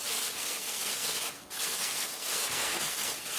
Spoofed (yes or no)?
yes